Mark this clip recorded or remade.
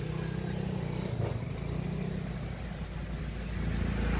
recorded